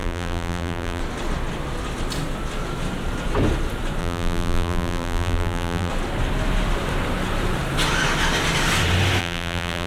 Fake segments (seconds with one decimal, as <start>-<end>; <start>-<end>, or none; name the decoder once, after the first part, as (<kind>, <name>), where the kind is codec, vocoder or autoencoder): 0.0-1.0 (vocoder, BigVGAN v2); 4.0-5.9; 9.2-9.9

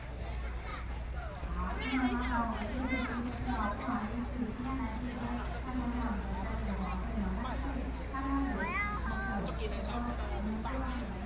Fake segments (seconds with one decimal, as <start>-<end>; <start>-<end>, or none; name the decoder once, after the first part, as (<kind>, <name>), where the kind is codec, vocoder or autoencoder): 0.7-1.7 (vocoder, BigVGAN v2); 2.4-4.2

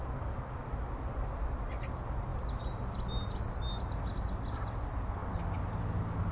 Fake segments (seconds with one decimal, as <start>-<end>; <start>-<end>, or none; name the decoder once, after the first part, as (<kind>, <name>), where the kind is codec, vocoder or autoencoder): none

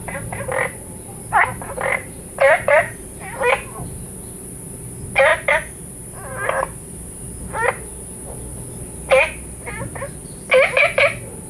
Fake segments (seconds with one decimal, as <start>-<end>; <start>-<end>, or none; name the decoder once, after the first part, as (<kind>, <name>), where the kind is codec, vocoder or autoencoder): 0.0-0.6 (vocoder, BigVGAN v2); 1.1-3.2

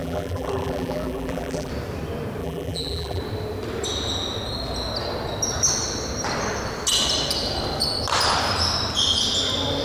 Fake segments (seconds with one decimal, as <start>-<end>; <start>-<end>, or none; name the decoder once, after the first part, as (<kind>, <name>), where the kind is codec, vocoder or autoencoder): 0.0-1.7 (vocoder, BigVGAN v2); 2.4-3.2